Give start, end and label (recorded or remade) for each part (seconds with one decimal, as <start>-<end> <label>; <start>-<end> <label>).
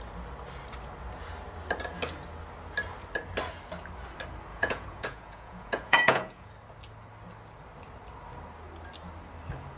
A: 0.0-4.5 recorded; 4.5-6.5 remade; 6.5-9.8 recorded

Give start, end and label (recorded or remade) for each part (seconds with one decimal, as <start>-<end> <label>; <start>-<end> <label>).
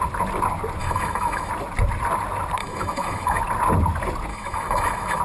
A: 0.0-0.8 recorded; 0.8-1.5 remade; 1.5-2.6 recorded; 2.6-3.4 remade; 3.4-4.3 recorded; 4.3-5.2 remade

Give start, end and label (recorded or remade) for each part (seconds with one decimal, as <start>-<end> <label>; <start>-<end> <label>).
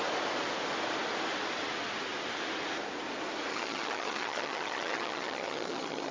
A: 0.0-3.5 recorded; 3.5-6.1 remade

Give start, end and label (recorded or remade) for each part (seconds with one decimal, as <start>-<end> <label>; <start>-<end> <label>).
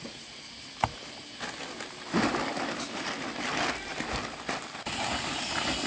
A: 0.0-5.9 recorded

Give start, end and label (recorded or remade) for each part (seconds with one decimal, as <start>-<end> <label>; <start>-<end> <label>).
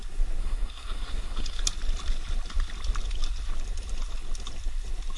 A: 0.0-0.4 recorded; 0.4-1.6 remade; 1.6-5.2 recorded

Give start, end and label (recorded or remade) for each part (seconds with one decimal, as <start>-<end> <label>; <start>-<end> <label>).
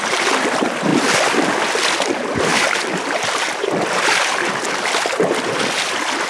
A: 0.0-6.3 recorded